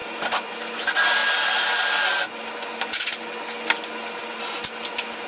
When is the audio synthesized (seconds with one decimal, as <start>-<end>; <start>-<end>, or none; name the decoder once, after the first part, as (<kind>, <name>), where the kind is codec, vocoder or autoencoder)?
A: 0.0-0.5 (vocoder, BigVGAN v2)